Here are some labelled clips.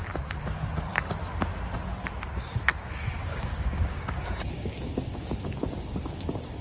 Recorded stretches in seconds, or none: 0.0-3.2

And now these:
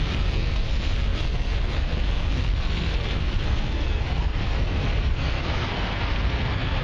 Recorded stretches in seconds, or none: none

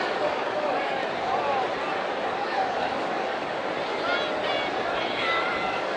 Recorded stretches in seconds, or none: 1.0-2.2; 3.6-5.0

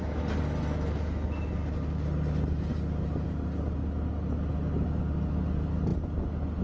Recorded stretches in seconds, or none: 0.0-6.6